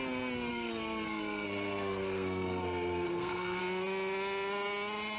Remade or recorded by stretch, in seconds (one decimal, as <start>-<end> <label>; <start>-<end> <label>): 0.0-0.5 recorded; 0.5-3.6 remade; 3.6-5.2 recorded